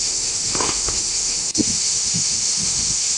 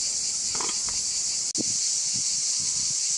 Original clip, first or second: second